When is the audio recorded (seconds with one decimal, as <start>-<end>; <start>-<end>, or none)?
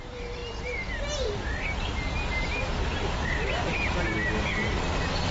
0.0-5.3